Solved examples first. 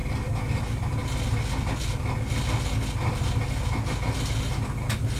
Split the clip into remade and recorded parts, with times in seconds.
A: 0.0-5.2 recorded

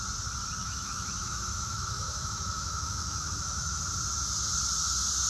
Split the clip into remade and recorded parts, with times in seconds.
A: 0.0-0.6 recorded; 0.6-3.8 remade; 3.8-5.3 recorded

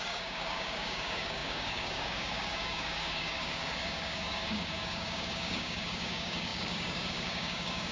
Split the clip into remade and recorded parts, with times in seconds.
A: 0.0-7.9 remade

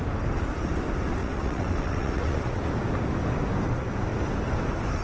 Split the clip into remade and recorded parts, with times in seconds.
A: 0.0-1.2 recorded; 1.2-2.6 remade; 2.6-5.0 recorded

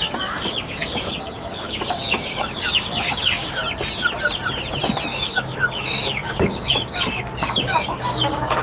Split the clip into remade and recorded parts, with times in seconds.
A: 0.0-3.6 remade; 3.6-5.1 recorded; 5.1-8.6 remade